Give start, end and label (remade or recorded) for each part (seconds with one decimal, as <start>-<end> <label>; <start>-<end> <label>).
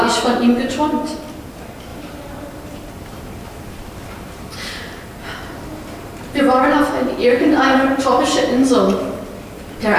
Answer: 0.0-1.9 recorded; 1.9-6.4 remade; 6.4-7.2 recorded; 7.2-8.1 remade; 8.1-10.0 recorded